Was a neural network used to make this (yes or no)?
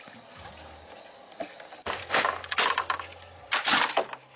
no